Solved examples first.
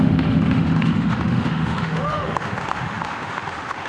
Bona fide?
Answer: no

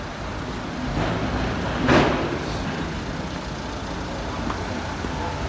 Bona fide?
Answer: yes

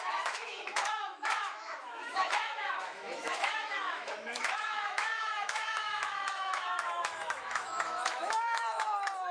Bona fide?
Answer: no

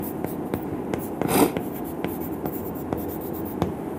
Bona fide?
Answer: yes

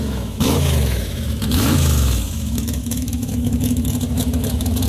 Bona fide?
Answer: no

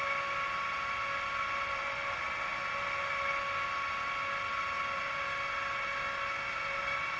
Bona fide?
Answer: yes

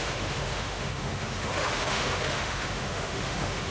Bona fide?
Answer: no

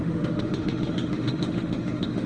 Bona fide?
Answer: no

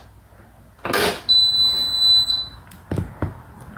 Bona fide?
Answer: yes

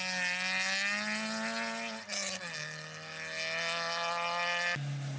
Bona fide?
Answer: yes